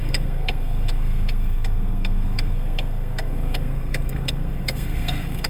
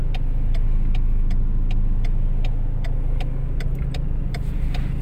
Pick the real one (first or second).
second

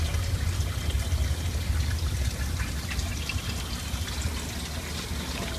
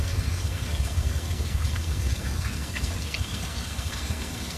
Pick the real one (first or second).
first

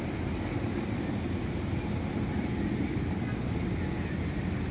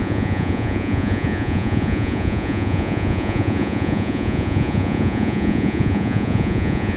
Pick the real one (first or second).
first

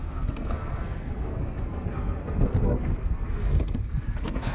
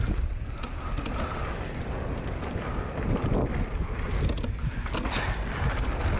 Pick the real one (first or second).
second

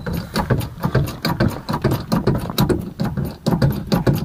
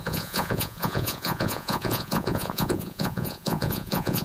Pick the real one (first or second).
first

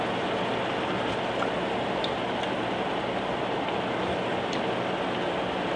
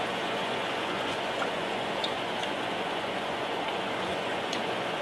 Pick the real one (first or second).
first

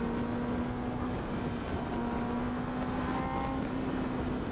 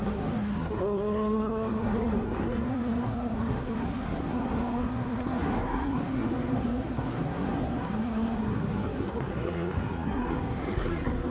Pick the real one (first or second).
first